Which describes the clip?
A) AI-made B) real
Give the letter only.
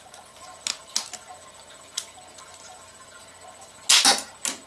B